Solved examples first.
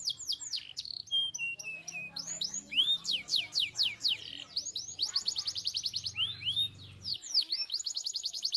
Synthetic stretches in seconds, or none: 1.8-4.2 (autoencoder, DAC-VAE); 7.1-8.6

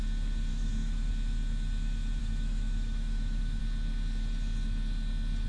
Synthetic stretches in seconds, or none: 0.5-1.1 (autoencoder, DAC-VAE); 2.2-3.6

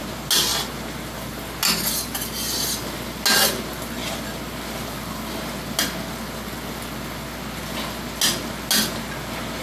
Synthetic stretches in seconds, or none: none

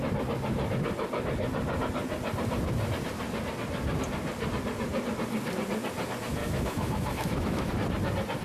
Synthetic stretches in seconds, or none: 6.4-7.7 (autoencoder, DAC-VAE)

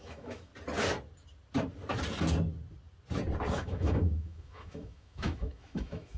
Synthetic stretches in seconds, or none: 0.0-0.5 (autoencoder, DAC-VAE); 3.5-6.2

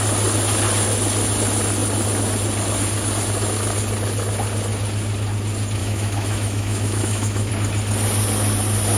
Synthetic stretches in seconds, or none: 5.8-7.5 (autoencoder, DAC-VAE)